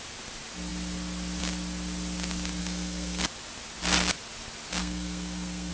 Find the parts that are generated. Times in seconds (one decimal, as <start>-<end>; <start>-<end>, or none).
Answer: 2.6-3.2; 4.8-5.7